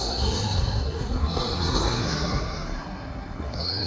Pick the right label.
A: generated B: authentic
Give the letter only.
A